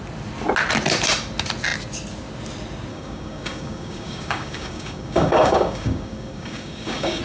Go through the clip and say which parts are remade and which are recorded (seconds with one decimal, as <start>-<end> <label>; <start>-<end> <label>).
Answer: 0.0-2.9 recorded; 2.9-7.2 remade

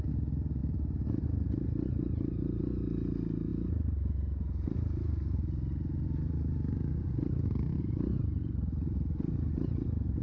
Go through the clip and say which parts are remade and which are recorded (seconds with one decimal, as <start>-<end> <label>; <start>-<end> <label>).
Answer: 0.0-10.2 recorded

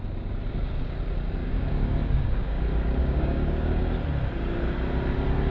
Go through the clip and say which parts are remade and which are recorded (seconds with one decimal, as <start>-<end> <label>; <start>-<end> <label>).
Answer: 0.0-1.4 recorded; 1.4-2.6 remade; 2.6-3.0 recorded; 3.0-3.8 remade; 3.8-5.5 recorded

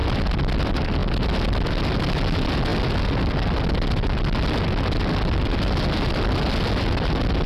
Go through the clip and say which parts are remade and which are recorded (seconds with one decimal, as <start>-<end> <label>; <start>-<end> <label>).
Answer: 0.0-7.5 recorded